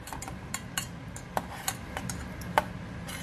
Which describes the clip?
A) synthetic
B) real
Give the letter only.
B